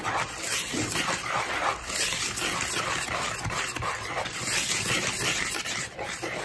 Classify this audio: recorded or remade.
recorded